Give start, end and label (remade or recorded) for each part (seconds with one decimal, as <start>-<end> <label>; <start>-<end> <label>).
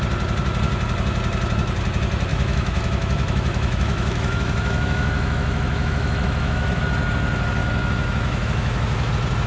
0.0-2.3 recorded; 2.3-6.8 remade; 6.8-7.6 recorded; 7.6-9.1 remade; 9.1-9.5 recorded